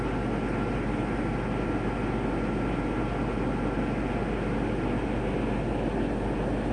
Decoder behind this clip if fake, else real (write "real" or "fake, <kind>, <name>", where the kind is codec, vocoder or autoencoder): real